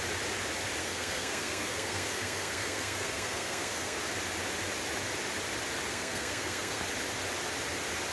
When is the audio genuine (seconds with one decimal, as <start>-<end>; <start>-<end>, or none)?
0.0-0.8; 4.0-5.9; 6.8-8.1